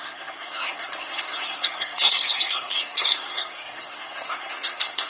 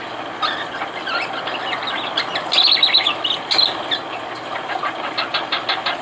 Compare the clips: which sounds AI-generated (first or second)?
first